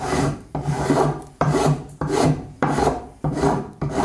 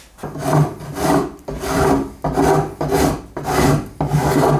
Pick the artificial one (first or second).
first